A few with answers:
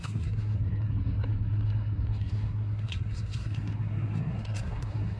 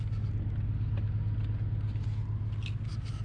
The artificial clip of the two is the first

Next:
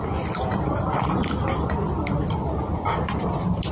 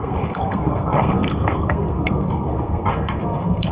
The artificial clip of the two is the second